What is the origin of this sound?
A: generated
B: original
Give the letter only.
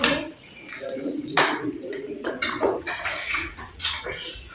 A